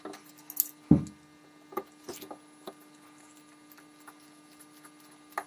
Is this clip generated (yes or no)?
no